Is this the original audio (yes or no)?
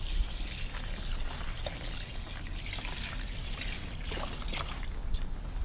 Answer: yes